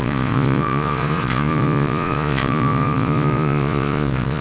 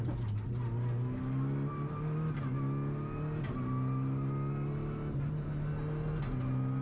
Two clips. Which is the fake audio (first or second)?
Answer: first